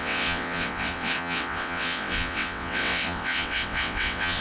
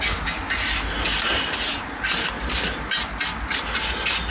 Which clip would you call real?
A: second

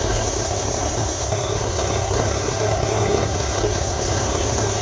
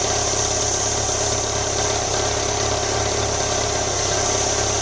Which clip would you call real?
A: second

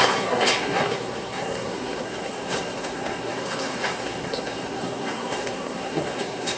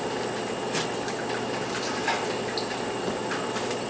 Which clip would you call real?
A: second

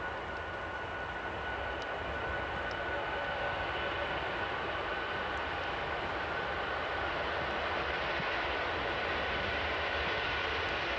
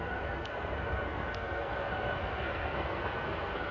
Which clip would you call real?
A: first